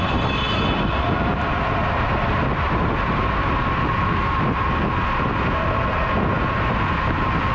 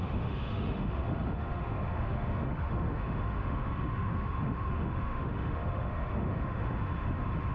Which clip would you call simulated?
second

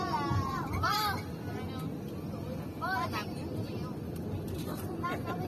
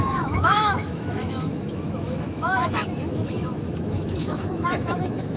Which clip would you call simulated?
second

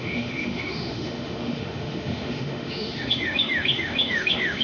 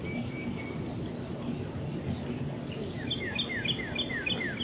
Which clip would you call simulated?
first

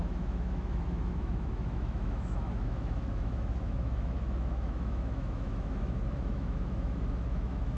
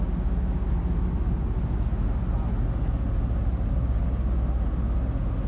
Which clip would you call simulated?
first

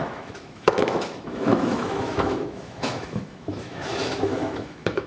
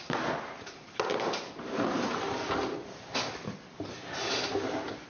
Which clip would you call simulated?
first